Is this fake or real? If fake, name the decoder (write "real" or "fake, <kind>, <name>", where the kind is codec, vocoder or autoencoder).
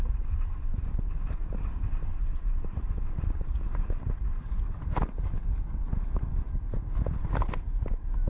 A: real